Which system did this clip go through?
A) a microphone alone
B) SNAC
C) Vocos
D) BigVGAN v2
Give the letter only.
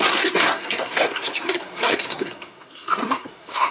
B